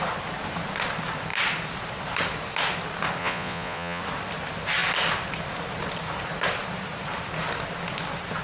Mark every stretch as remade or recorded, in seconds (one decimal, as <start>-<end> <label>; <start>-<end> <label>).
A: 0.0-3.2 recorded; 3.2-4.0 remade; 4.0-8.4 recorded